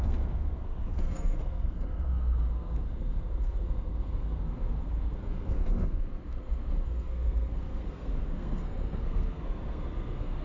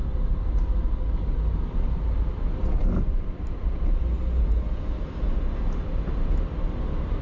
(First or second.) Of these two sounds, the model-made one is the first